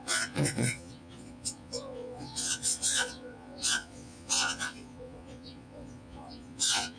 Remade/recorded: remade